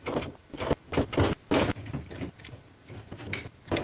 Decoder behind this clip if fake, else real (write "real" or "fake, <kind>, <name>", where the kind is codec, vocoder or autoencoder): real